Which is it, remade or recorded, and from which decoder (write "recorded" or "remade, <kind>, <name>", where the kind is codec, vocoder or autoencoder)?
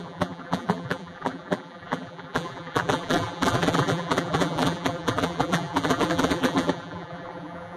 remade, vocoder, BigVGAN v2